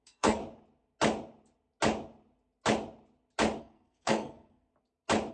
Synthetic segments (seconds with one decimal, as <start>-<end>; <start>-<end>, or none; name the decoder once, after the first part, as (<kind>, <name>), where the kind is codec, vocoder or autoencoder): 0.0-0.4 (codec, SNAC); 3.6-4.7